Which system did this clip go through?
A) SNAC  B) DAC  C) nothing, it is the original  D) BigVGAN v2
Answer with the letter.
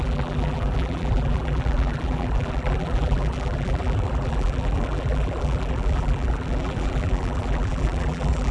D